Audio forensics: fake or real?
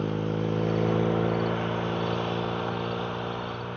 real